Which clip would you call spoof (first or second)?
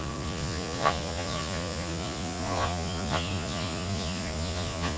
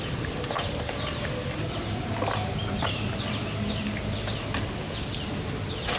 first